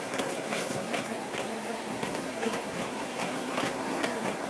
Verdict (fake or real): fake